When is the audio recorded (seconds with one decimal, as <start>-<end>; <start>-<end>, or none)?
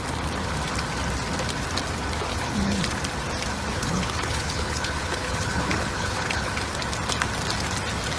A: 0.0-2.3; 2.8-3.7; 6.5-8.2